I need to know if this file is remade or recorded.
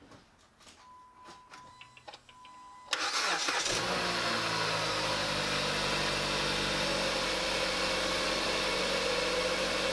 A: recorded